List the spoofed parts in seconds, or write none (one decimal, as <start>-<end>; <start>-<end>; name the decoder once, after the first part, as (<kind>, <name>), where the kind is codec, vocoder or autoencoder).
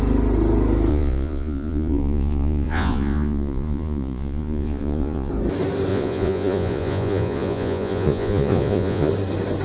0.9-5.3 (vocoder, Vocos); 5.9-9.1